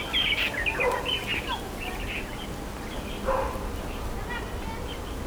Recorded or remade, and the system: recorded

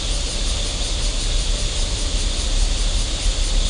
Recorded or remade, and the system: recorded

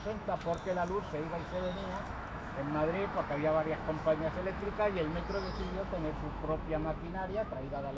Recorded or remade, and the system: remade, autoencoder, DAC-VAE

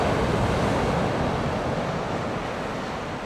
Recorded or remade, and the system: recorded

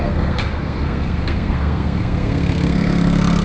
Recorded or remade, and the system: remade, codec, SNAC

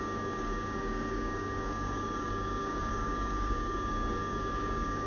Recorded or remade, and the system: remade, codec, DAC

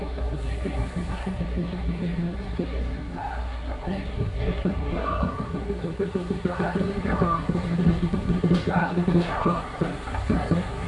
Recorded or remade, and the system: remade, codec, SNAC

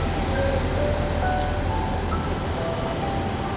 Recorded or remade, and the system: recorded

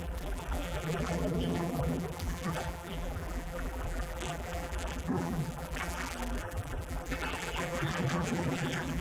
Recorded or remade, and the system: remade, vocoder, BigVGAN v2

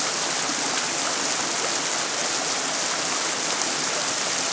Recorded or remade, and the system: recorded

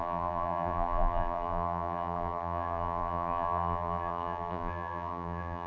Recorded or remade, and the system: remade, vocoder, BigVGAN v2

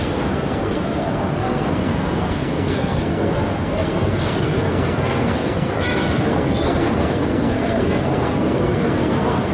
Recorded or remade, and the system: remade, codec, SNAC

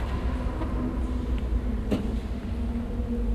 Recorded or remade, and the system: recorded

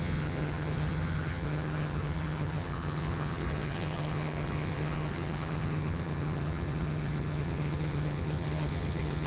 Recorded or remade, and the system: remade, vocoder, HiFi-GAN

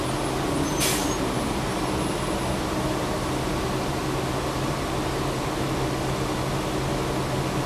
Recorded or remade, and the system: recorded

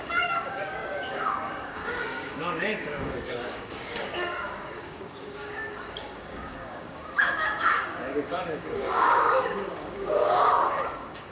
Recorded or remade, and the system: remade, codec, DAC